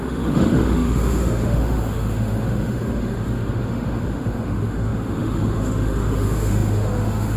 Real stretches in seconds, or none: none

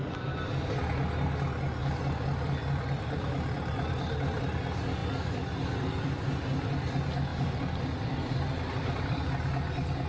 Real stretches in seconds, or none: 0.0-1.8; 4.4-5.0; 6.6-7.3; 9.3-10.1

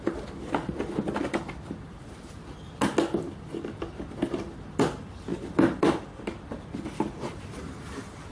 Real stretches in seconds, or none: 0.0-5.3; 7.4-8.3

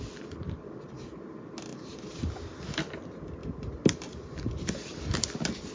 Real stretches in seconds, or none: 0.0-1.7; 2.2-3.4; 4.5-5.7

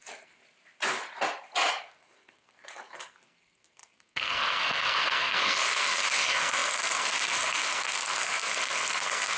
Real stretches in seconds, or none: 0.4-1.7

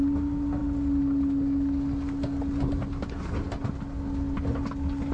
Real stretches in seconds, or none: 0.0-5.1

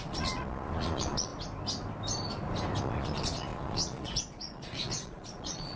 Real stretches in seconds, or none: 1.3-2.8